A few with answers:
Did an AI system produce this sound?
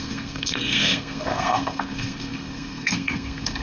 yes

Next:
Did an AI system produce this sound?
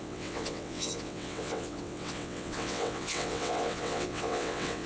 yes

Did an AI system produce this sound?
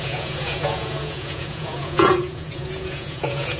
yes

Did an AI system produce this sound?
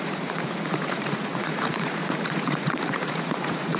yes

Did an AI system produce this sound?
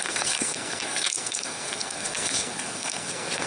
yes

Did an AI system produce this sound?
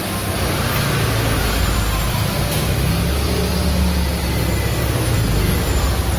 no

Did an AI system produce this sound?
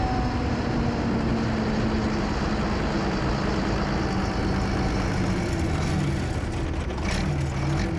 no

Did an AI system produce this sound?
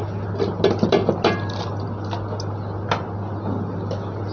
no